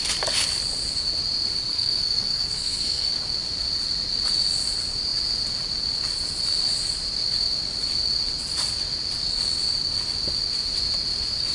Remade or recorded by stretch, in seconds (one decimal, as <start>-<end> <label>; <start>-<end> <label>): 0.0-1.7 recorded; 1.7-3.1 remade; 3.1-11.5 recorded